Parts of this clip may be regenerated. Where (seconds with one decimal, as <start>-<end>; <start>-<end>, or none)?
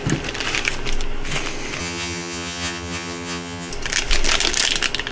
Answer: 1.8-3.7